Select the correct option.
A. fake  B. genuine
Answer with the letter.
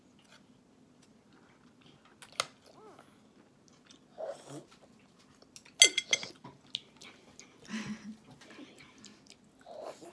B